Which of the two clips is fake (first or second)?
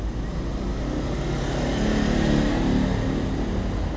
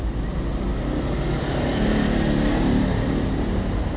second